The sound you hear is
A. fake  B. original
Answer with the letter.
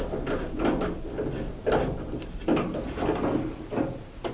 B